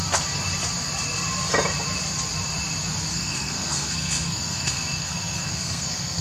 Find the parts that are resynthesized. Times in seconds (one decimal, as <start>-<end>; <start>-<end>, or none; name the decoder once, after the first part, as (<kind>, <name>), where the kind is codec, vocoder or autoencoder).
3.1-6.2 (codec, SNAC)